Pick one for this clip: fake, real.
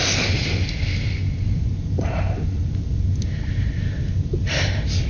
real